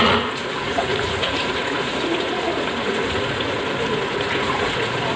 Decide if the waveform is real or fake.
fake